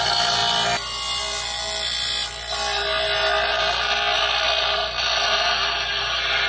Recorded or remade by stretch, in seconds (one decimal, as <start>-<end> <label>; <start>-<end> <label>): 0.0-6.5 recorded